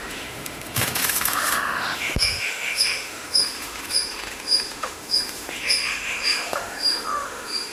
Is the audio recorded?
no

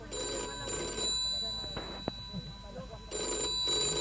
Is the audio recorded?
yes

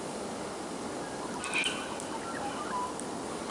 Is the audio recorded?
yes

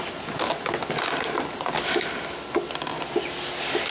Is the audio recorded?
yes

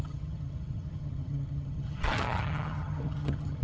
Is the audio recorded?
no